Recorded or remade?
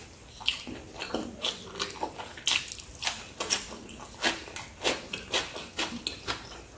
recorded